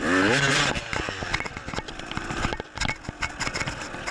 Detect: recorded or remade recorded